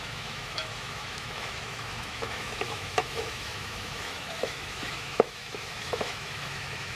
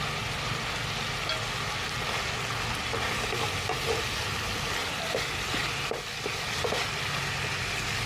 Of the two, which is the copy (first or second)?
first